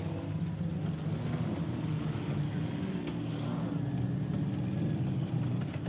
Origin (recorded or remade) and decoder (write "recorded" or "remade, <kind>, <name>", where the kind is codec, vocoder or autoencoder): recorded